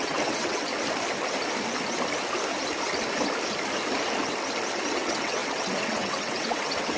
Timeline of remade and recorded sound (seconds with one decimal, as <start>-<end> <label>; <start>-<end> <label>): 0.0-0.7 remade; 0.7-4.9 recorded; 4.9-7.0 remade

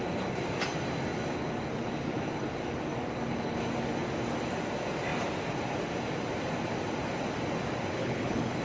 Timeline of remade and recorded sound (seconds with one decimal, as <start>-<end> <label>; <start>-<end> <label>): 0.0-7.9 recorded; 7.9-8.6 remade

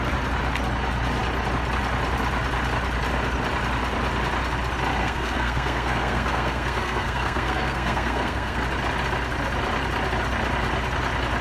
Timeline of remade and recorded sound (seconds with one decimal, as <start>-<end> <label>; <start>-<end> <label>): 0.0-5.0 recorded; 5.0-8.6 remade; 8.6-11.4 recorded

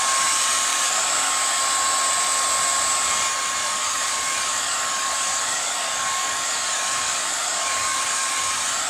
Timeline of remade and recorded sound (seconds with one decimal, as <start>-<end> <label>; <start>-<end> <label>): 0.0-0.7 recorded; 0.7-1.3 remade; 1.3-3.6 recorded; 3.6-8.4 remade; 8.4-8.9 recorded

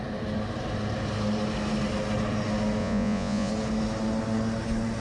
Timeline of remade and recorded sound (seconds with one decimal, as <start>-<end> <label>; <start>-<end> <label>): 0.0-2.8 recorded; 2.8-3.5 remade; 3.5-5.0 recorded

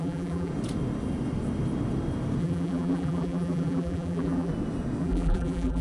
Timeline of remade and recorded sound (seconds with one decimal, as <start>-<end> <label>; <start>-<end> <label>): 0.0-0.5 remade; 0.5-2.4 recorded; 2.4-4.5 remade; 4.5-5.0 recorded; 5.0-5.8 remade